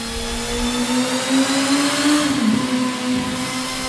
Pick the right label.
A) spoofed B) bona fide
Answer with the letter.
B